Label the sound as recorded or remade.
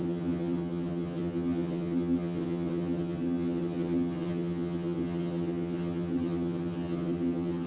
remade